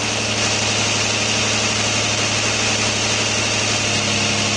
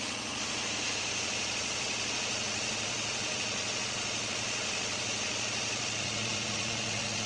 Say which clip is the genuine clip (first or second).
first